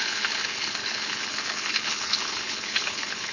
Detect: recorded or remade remade